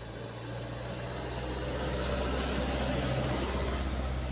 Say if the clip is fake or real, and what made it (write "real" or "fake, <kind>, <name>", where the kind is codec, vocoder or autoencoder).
real